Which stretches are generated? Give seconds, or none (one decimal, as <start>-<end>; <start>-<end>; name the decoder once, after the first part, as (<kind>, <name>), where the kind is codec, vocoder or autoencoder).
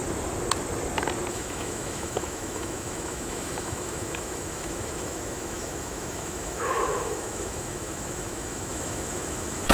1.3-9.7 (autoencoder, DAC-VAE)